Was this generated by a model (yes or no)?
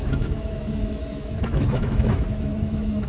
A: yes